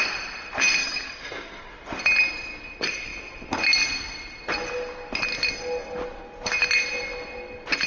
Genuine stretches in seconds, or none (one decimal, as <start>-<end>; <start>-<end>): 0.0-0.8; 1.7-7.9